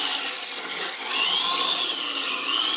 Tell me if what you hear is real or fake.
real